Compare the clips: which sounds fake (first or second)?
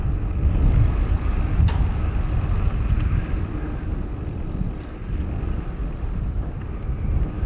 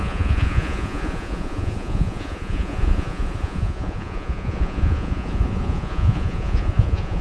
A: second